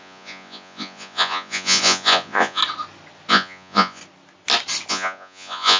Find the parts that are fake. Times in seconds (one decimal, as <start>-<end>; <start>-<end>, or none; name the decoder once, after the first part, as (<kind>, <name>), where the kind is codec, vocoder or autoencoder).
0.0-2.6 (vocoder, Vocos); 3.3-4.0; 4.9-5.8

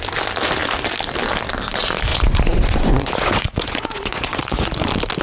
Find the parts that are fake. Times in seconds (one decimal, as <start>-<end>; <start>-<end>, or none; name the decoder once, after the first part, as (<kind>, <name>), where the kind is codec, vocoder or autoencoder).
2.1-4.8 (vocoder, Vocos)

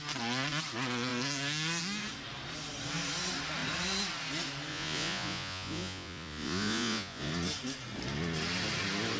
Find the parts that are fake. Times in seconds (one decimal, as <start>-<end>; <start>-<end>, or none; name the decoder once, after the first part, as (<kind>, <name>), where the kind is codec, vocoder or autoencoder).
4.7-7.3 (vocoder, Vocos)

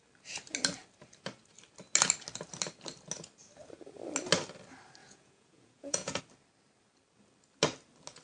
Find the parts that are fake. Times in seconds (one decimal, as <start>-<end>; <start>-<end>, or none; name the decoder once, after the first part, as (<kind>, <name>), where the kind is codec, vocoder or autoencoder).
5.0-6.2 (vocoder, Vocos)

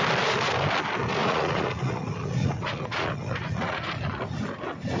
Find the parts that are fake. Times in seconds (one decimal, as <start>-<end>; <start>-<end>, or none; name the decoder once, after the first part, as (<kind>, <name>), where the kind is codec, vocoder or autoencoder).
1.2-4.2 (vocoder, Vocos)

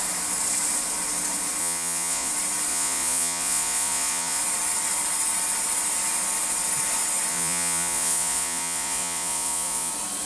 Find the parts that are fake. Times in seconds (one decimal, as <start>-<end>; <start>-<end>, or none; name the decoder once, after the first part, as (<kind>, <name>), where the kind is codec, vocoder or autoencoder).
1.6-2.3 (vocoder, Vocos); 2.7-4.4; 7.3-9.9

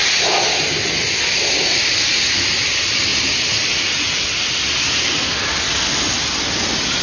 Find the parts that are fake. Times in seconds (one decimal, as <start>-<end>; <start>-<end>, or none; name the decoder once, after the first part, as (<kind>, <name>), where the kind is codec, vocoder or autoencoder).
none

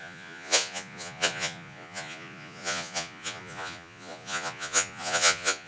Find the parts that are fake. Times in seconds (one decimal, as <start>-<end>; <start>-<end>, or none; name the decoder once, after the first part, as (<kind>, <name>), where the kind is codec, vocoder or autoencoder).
0.0-5.7 (vocoder, Vocos)